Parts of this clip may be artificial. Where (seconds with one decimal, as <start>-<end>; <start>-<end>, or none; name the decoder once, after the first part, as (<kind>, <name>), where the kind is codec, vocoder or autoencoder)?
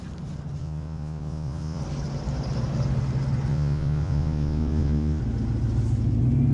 0.6-1.8 (vocoder, Vocos); 3.5-5.2